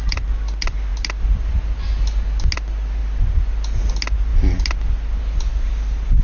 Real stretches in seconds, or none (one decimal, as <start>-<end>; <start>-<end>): 0.0-6.2